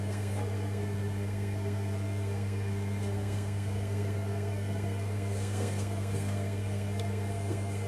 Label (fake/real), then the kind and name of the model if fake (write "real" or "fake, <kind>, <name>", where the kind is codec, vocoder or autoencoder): fake, codec, SNAC